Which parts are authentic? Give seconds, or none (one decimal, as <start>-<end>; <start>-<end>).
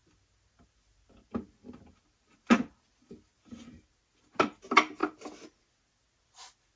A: 0.0-6.8